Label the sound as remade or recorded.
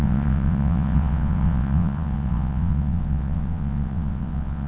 remade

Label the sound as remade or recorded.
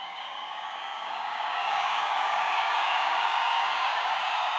remade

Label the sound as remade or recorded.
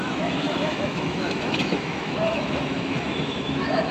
remade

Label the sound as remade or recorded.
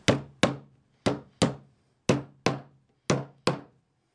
recorded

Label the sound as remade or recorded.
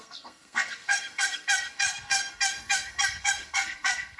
remade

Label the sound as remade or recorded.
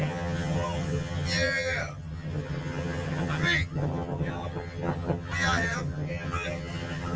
remade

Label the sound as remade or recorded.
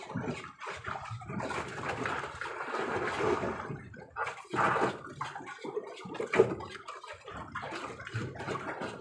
recorded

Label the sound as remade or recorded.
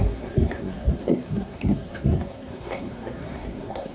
remade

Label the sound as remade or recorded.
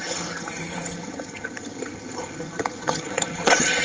remade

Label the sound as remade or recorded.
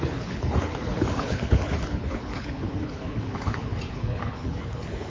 remade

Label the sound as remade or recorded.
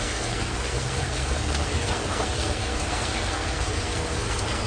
remade